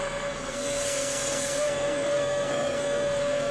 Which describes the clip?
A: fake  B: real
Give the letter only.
A